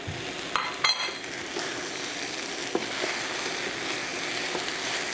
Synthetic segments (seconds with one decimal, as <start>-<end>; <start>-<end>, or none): none